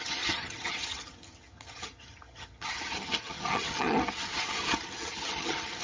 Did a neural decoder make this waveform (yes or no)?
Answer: yes